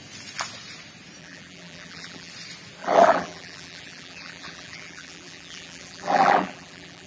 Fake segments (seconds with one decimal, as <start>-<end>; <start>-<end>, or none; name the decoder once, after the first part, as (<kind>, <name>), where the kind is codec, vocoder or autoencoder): 1.2-2.3 (vocoder, BigVGAN v2); 2.8-7.1